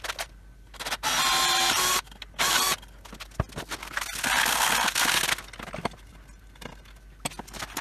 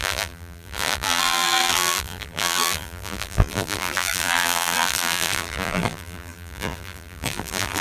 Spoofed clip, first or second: second